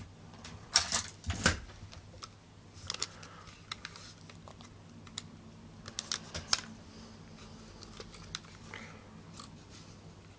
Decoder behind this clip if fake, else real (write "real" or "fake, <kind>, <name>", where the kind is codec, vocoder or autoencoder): real